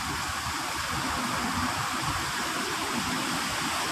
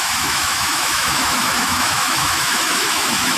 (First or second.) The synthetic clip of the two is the second